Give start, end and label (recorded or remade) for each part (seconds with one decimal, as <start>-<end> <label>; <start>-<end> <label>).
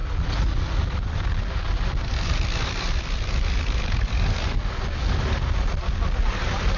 0.0-6.8 recorded